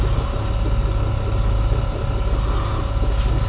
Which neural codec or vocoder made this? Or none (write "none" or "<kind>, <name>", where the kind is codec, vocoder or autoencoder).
none